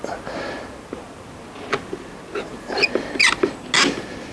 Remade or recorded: recorded